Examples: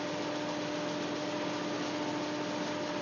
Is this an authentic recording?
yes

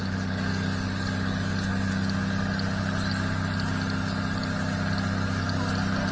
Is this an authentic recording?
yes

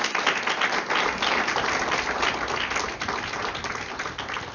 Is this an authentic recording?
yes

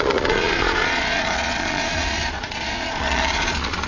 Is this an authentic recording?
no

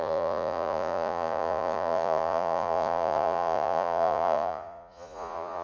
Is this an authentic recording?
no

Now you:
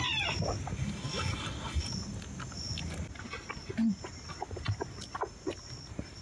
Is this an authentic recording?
yes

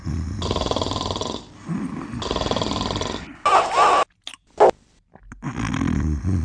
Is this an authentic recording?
yes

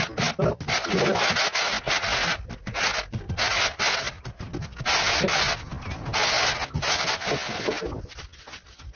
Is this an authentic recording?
yes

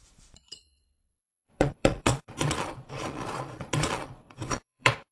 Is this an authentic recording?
no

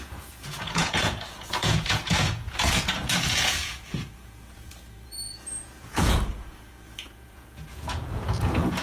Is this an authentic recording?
no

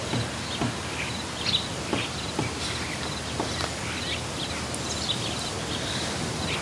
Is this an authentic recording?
yes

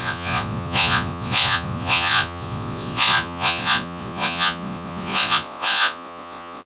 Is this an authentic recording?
no